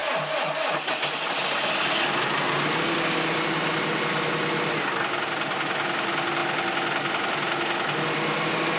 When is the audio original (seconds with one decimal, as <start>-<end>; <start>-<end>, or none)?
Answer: 0.0-8.8

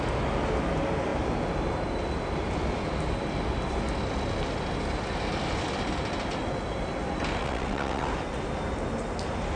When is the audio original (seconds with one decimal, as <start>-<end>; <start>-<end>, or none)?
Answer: 0.0-7.4; 8.1-9.6

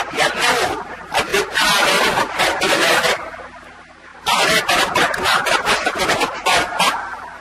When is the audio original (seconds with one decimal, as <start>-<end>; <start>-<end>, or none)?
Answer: 1.3-2.4

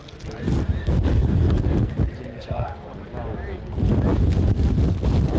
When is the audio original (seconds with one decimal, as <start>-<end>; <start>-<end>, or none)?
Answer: 0.0-0.8; 1.9-2.3; 2.9-5.4

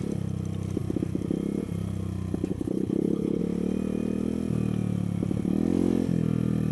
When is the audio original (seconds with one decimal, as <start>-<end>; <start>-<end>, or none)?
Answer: 0.0-2.5; 3.4-6.7

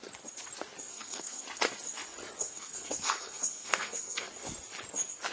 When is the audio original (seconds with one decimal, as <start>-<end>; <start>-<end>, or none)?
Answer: 0.0-0.9; 1.4-2.4; 4.3-5.3